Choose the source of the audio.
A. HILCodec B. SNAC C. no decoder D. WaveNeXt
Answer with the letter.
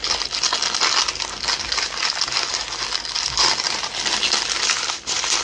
C